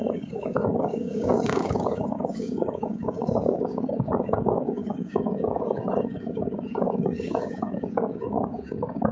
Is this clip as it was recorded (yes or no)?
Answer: no